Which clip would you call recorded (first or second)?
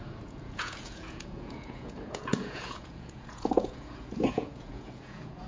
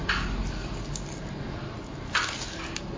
second